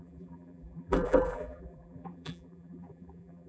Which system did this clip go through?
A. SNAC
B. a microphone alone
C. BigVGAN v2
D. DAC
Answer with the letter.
C